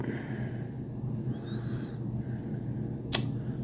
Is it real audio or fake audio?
real